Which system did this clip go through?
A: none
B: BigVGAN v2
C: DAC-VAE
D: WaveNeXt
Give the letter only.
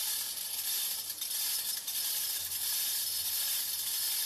A